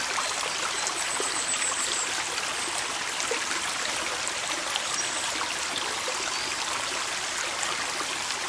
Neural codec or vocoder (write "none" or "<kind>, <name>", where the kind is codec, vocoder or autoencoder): none